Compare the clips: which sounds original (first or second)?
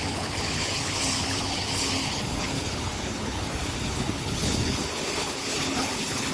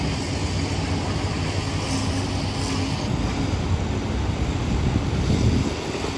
second